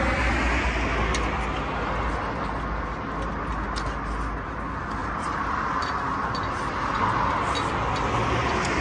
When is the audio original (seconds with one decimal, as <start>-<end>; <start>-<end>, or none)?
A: 0.0-5.0; 5.7-8.8